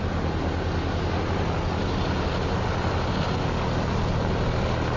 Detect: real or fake real